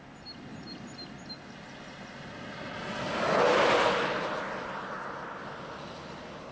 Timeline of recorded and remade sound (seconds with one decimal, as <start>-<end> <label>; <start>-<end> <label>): 0.0-6.5 recorded